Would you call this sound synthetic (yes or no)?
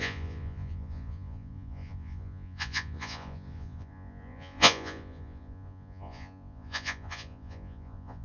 yes